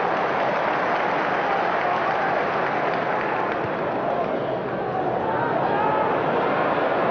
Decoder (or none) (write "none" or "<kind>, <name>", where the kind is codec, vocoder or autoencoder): none